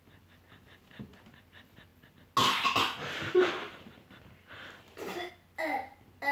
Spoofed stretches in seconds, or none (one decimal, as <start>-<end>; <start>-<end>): none